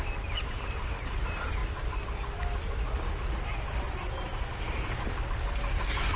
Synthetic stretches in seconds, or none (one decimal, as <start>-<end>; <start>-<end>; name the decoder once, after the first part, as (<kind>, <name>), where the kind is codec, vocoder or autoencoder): none